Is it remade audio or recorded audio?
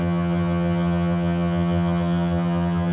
remade